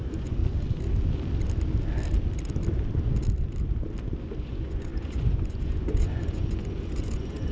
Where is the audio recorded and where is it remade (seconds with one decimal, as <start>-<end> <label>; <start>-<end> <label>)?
0.0-0.4 remade; 0.4-4.4 recorded; 4.4-7.5 remade